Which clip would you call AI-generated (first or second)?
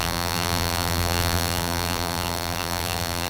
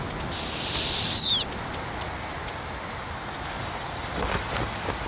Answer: first